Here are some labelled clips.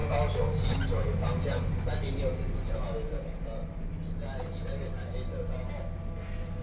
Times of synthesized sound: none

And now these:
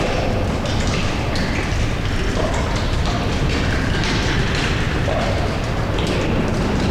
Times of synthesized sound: none

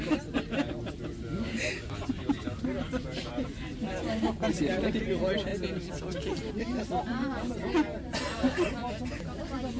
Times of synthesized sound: none

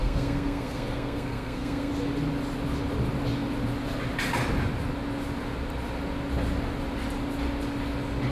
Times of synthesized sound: 0.0-1.9

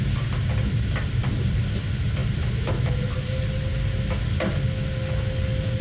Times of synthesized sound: none